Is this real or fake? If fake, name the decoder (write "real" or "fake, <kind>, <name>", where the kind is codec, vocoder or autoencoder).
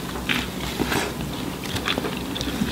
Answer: fake, vocoder, BigVGAN v2